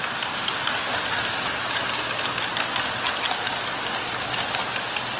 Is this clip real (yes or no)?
yes